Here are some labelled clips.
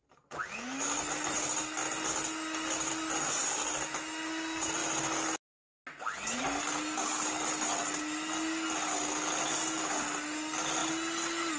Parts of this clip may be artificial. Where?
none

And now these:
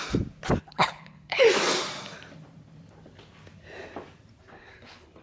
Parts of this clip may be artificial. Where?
0.6-1.4; 4.5-5.2

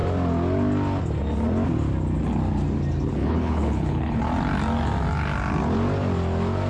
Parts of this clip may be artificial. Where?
3.1-4.2

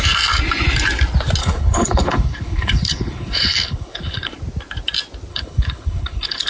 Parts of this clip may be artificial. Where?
1.4-4.3; 5.3-6.5

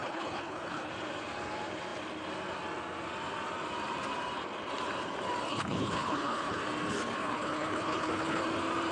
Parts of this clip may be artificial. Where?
0.0-0.9; 5.5-6.6; 7.2-8.4

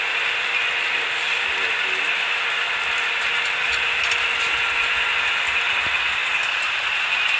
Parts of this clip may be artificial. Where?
none

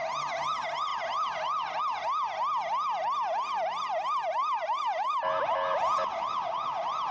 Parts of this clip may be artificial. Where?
none

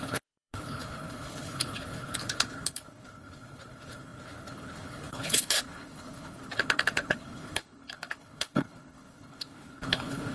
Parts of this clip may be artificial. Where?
0.0-10.3